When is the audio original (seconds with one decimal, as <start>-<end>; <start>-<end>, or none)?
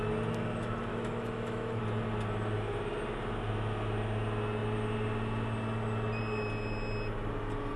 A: 0.0-0.9; 1.8-7.8